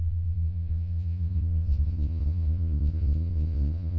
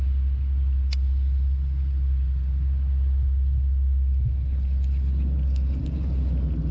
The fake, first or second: first